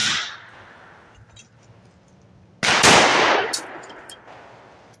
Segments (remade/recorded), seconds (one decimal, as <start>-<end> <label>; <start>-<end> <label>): 0.0-0.9 remade; 0.9-3.1 recorded; 3.1-4.6 remade; 4.6-5.0 recorded